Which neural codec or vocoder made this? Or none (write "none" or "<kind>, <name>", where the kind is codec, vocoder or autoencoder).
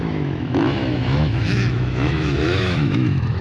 autoencoder, DAC-VAE